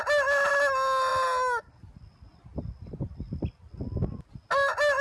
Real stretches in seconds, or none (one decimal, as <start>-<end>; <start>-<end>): 0.0-2.5; 3.3-5.0